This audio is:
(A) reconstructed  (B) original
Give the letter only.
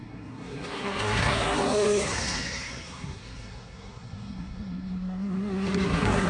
A